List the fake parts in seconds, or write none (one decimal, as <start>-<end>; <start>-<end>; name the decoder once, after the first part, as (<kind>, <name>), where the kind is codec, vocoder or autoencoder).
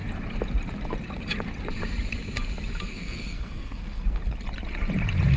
2.9-4.2 (codec, SNAC)